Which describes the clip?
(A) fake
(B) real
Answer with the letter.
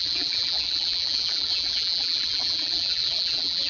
A